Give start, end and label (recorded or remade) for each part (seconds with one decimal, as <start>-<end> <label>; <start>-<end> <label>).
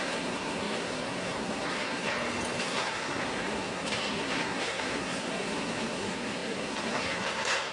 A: 0.0-2.1 remade; 2.1-2.6 recorded; 2.6-7.7 remade